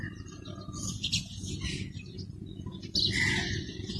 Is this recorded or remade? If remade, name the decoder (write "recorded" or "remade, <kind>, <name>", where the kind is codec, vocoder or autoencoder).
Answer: recorded